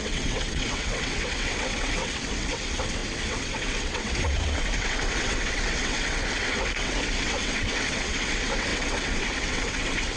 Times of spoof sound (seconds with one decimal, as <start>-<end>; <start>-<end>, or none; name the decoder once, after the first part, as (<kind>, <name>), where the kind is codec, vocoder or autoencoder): 0.0-10.2 (vocoder, WaveNeXt)